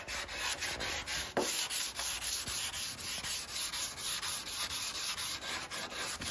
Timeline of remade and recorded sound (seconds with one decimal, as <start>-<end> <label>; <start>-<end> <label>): 0.0-1.1 recorded; 1.1-1.8 remade; 1.8-3.7 recorded; 3.7-6.3 remade